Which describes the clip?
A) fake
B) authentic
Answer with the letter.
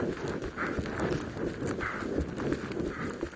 B